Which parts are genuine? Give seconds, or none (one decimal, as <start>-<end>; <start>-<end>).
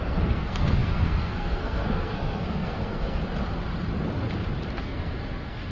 3.2-4.8